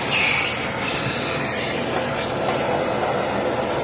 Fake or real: real